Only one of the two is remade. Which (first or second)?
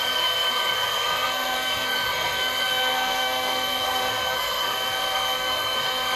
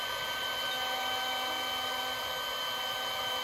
first